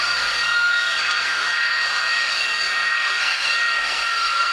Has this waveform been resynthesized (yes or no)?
yes